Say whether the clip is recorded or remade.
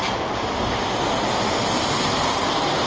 recorded